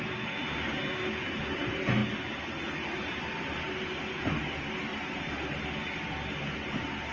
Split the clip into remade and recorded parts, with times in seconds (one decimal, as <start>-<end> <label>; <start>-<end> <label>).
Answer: 0.0-4.9 recorded; 4.9-5.7 remade; 5.7-7.1 recorded